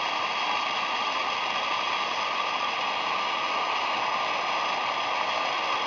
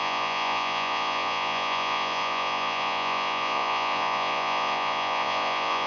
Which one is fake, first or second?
second